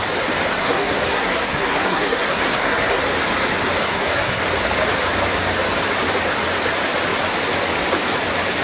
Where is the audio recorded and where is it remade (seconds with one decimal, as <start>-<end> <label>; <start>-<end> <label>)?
0.0-0.6 recorded; 0.6-3.0 remade; 3.0-3.8 recorded; 3.8-4.4 remade; 4.4-8.6 recorded